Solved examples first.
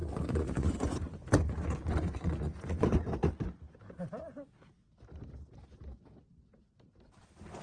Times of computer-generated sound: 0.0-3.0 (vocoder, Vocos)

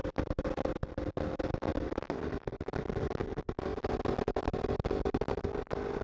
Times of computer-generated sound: none

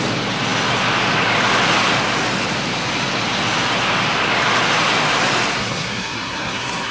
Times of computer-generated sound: 5.6-6.9 (codec, SNAC)

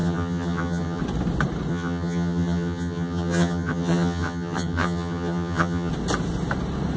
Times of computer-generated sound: 0.0-1.0 (vocoder, HiFi-GAN); 1.7-5.9

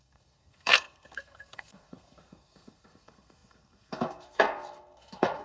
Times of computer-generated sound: 0.0-5.4 (codec, SNAC)

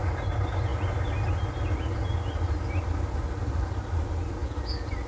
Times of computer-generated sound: none